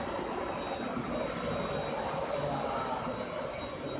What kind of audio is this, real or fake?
real